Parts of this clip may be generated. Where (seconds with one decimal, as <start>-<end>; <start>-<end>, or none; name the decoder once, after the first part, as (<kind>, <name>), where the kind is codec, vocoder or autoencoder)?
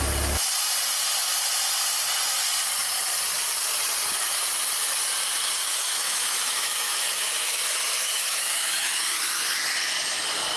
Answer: 5.6-9.6 (autoencoder, DAC-VAE)